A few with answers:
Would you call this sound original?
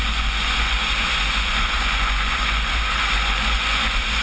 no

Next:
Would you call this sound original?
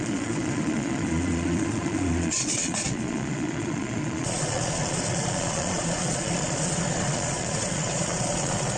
no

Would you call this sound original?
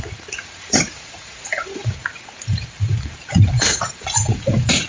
no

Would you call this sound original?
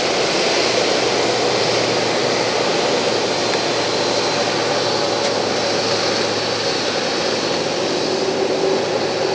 yes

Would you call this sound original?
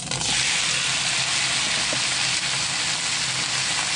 yes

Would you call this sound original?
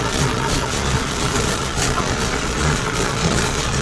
no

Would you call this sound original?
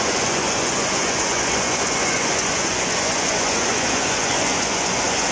no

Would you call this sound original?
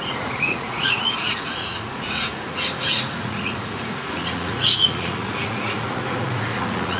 no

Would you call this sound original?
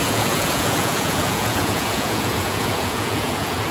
no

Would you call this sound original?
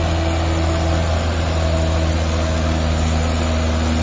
yes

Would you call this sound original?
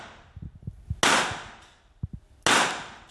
yes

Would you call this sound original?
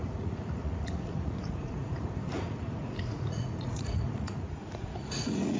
no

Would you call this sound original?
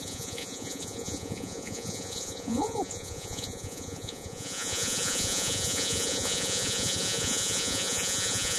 no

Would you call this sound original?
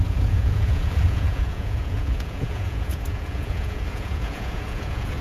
no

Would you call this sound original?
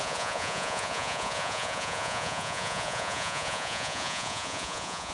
no